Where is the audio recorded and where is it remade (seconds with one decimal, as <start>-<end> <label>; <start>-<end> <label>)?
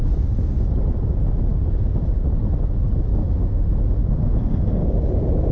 0.0-3.2 recorded; 3.2-3.7 remade; 3.7-5.5 recorded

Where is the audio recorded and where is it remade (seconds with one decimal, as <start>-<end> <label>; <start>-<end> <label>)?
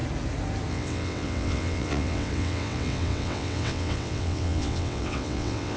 0.0-0.7 recorded; 0.7-5.8 remade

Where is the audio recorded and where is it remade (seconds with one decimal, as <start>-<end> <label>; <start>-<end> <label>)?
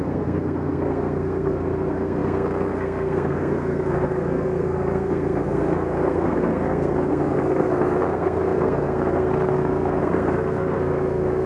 0.0-11.5 remade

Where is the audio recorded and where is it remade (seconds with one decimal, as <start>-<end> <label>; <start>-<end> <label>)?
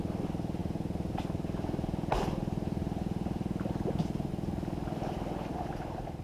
0.0-6.2 recorded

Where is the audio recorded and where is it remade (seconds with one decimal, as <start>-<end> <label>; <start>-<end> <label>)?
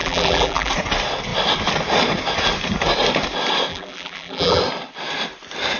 0.0-0.7 remade; 0.7-3.7 recorded; 3.7-4.6 remade; 4.6-5.8 recorded